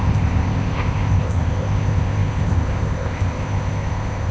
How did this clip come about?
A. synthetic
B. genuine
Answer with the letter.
A